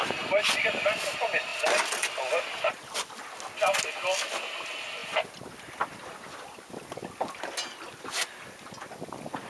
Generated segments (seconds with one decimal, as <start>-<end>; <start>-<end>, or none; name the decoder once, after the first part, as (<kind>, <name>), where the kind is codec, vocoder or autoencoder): none